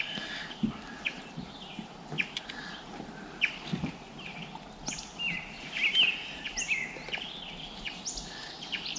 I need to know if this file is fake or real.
real